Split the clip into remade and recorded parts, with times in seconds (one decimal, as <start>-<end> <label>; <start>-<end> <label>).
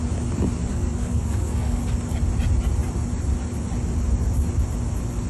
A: 0.0-0.7 recorded; 0.7-1.8 remade; 1.8-5.3 recorded